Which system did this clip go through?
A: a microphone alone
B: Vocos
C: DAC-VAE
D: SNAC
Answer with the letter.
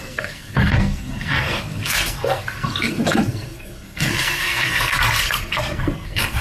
D